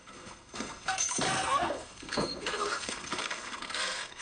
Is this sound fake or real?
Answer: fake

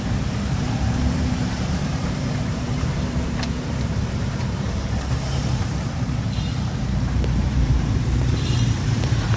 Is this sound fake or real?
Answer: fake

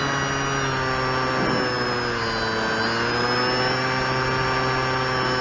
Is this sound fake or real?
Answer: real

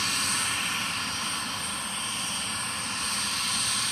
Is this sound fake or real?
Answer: real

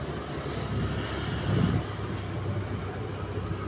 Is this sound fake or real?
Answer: real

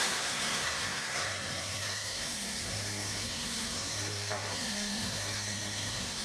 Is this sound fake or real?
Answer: fake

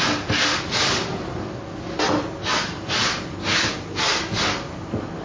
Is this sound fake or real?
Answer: real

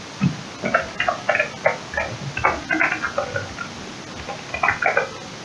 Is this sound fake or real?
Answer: real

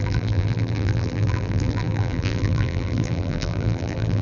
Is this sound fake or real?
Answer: fake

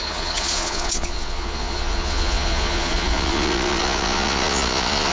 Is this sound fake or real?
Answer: fake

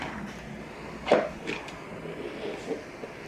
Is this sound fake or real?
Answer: real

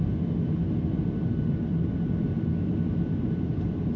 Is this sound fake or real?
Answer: real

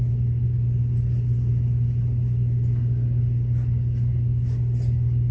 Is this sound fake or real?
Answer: real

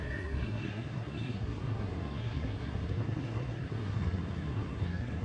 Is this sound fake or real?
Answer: fake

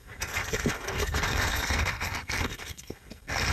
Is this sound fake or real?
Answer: fake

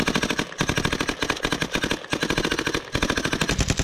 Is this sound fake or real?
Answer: real